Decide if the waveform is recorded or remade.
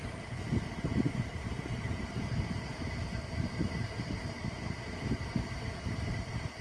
remade